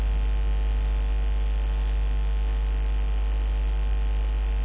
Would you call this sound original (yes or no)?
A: yes